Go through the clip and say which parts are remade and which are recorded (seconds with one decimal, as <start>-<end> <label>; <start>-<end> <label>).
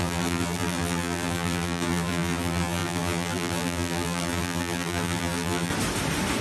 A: 0.0-5.7 remade; 5.7-6.4 recorded